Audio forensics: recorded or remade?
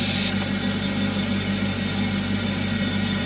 recorded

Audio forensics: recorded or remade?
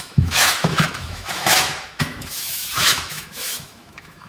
remade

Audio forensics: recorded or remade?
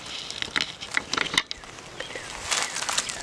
recorded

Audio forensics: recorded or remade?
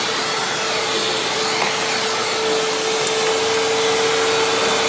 recorded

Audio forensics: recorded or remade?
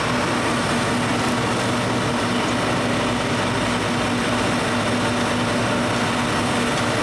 recorded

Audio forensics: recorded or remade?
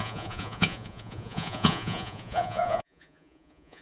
remade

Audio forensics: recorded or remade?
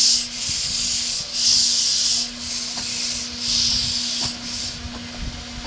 recorded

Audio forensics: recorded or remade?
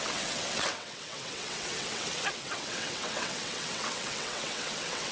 remade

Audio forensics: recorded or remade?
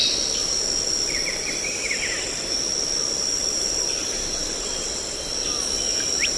remade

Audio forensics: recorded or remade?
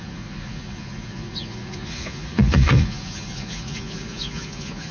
remade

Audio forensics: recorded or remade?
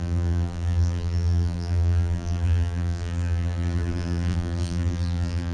remade